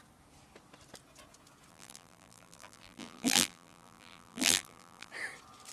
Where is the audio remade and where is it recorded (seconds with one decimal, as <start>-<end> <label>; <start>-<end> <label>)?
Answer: 0.0-1.7 recorded; 1.7-5.1 remade; 5.1-5.7 recorded